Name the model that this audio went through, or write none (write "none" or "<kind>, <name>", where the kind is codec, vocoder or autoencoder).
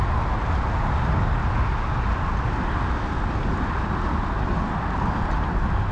none